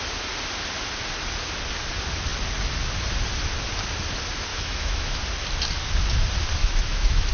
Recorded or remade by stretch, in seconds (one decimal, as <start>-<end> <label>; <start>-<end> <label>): 0.0-4.5 recorded; 4.5-5.2 remade; 5.2-6.6 recorded; 6.6-7.3 remade